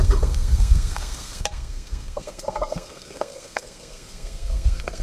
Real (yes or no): no